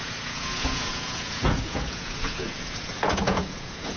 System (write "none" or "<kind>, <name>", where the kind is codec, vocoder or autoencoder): vocoder, Vocos